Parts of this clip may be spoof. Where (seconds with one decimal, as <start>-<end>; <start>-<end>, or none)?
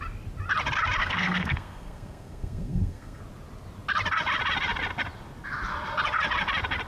1.0-3.2